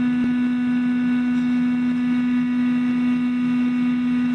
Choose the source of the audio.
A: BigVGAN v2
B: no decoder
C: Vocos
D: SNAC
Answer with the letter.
B